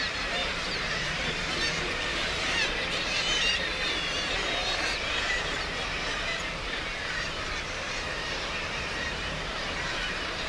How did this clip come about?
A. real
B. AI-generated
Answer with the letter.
B